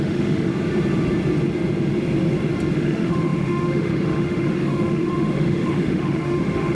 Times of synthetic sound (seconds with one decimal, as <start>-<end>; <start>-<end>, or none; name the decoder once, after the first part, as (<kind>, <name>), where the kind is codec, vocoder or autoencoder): 0.0-0.5 (autoencoder, DAC-VAE); 2.7-6.7

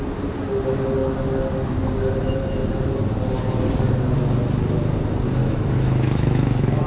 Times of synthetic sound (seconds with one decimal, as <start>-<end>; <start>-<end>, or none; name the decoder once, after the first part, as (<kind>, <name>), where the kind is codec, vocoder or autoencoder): 5.4-6.9 (autoencoder, DAC-VAE)

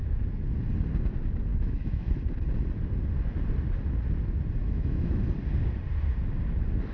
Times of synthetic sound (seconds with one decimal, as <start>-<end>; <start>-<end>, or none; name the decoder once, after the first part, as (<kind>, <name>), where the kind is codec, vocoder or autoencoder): 1.5-2.1 (autoencoder, DAC-VAE); 4.6-5.1

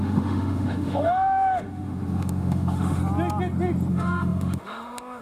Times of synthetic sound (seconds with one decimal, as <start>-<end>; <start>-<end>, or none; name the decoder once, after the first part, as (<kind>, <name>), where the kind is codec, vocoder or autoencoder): 0.0-3.0 (autoencoder, DAC-VAE); 3.9-5.2

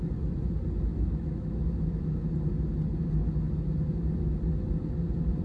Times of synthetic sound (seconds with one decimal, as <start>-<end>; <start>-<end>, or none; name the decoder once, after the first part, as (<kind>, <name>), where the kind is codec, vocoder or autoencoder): 0.9-2.2 (autoencoder, DAC-VAE)

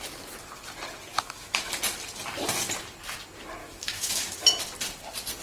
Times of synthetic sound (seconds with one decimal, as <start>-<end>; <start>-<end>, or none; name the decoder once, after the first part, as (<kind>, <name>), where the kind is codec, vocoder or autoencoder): 1.1-1.8 (autoencoder, DAC-VAE); 3.6-4.6

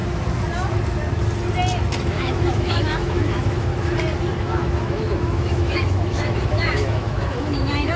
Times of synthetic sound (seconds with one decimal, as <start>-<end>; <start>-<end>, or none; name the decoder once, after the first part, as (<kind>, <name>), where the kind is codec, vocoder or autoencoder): 2.1-3.7 (autoencoder, DAC-VAE); 4.4-8.0

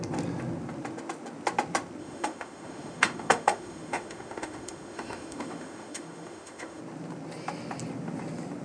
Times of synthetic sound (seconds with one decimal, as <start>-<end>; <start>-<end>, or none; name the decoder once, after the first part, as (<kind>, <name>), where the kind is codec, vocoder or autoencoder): 2.0-6.8 (autoencoder, DAC-VAE)